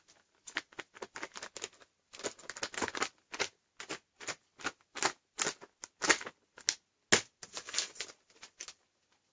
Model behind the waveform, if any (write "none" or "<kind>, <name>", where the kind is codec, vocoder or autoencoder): none